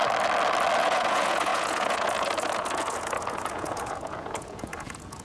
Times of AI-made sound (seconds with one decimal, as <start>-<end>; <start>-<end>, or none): 0.8-5.2